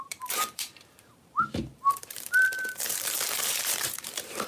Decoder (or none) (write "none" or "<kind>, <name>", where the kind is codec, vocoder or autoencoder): vocoder, BigVGAN v2